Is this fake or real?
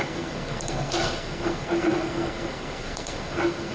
fake